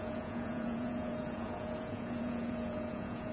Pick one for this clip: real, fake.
fake